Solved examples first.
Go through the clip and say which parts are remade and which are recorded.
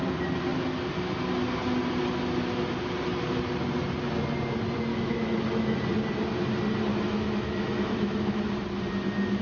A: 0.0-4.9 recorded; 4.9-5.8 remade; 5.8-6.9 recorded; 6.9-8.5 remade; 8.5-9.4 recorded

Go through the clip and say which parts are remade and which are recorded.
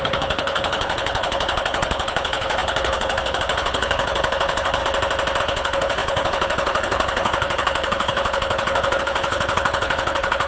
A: 0.0-4.8 remade; 4.8-5.4 recorded; 5.4-10.5 remade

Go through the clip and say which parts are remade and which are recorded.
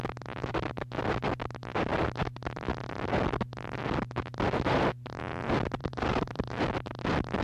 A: 0.0-5.8 recorded; 5.8-6.6 remade; 6.6-7.4 recorded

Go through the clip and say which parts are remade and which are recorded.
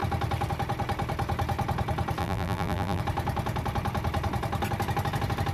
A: 0.0-2.2 recorded; 2.2-3.0 remade; 3.0-5.5 recorded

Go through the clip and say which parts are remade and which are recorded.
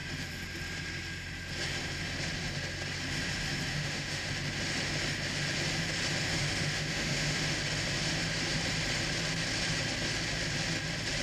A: 0.0-3.7 recorded; 3.7-4.3 remade; 4.3-6.3 recorded; 6.3-7.6 remade; 7.6-11.2 recorded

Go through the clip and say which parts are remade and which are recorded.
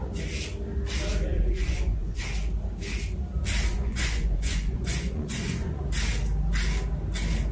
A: 0.0-1.3 recorded; 1.3-2.2 remade; 2.2-3.7 recorded; 3.7-5.8 remade; 5.8-7.5 recorded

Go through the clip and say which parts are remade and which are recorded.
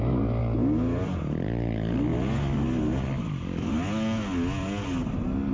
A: 0.0-0.4 recorded; 0.4-1.2 remade; 1.2-5.5 recorded